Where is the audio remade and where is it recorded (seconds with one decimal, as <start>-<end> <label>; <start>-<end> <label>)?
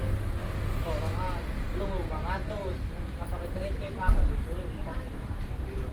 0.0-2.4 recorded; 2.4-4.3 remade; 4.3-4.8 recorded; 4.8-5.9 remade